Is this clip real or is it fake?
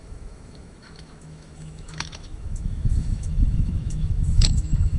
fake